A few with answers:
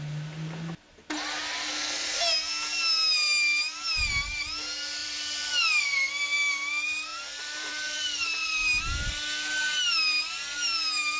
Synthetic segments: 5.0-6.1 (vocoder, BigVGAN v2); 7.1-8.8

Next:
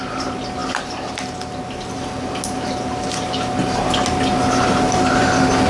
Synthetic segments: none